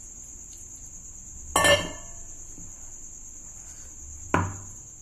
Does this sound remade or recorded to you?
recorded